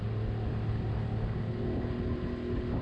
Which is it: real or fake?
real